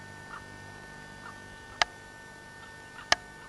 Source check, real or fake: real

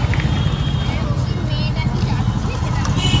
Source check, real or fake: real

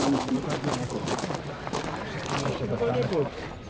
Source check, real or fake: fake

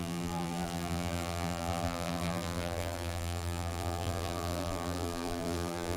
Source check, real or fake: fake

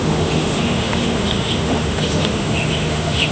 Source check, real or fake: fake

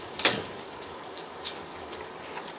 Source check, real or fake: fake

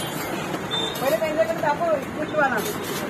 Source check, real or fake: real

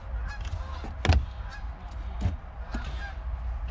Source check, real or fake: real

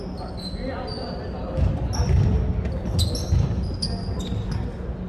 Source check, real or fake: real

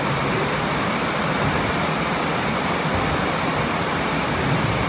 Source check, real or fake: real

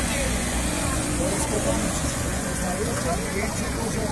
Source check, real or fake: fake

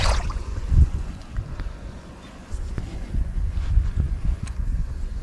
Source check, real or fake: fake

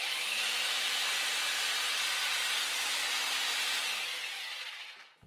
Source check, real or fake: real